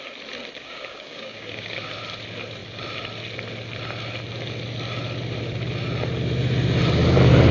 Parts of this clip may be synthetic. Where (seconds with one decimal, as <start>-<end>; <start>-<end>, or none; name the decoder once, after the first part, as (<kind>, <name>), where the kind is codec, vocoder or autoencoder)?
0.6-1.9 (codec, DAC)